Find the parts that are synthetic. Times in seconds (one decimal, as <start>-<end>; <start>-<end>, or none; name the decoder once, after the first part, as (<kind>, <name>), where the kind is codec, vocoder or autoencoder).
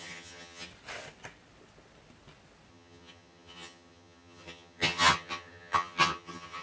0.0-0.7 (vocoder, HiFi-GAN); 2.7-6.6